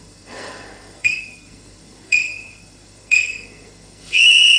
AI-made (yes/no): yes